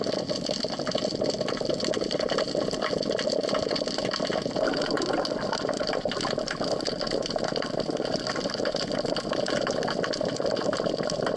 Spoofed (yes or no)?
no